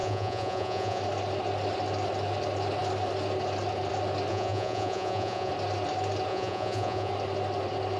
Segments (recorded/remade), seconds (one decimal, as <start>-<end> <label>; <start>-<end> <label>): 0.0-1.0 remade; 1.0-4.3 recorded; 4.3-5.5 remade; 5.5-6.3 recorded; 6.3-7.1 remade; 7.1-8.0 recorded